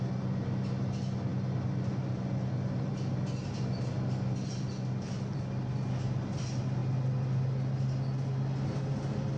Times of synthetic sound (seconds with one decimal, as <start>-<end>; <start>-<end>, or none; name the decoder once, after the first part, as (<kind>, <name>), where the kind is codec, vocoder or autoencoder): none

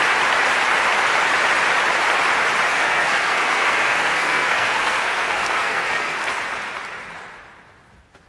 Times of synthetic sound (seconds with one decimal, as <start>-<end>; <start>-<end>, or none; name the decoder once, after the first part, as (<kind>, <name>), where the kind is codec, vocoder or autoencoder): 2.7-6.3 (codec, SNAC)

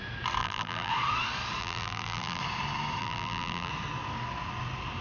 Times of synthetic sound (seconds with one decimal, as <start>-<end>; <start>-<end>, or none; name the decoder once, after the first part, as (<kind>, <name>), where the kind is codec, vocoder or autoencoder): 0.4-0.9 (vocoder, BigVGAN v2); 1.6-2.4; 3.0-3.7

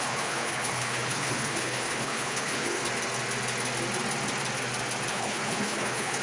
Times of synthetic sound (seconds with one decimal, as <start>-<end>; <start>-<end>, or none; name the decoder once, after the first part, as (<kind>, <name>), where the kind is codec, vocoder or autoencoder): 0.0-2.8 (codec, HILCodec); 5.1-6.2

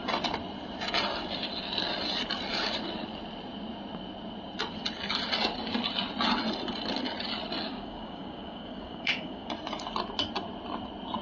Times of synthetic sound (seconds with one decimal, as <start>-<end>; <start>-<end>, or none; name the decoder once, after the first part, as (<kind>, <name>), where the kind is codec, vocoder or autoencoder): 7.7-9.5 (codec, DAC)

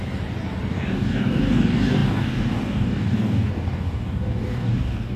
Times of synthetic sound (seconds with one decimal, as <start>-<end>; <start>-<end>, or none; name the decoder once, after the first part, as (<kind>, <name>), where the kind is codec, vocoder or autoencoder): 0.7-5.2 (codec, DAC)

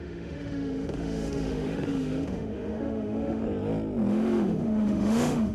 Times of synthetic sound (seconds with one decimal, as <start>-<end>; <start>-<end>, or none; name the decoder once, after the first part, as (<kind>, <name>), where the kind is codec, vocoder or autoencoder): 0.0-3.4 (autoencoder, DAC-VAE); 4.1-5.5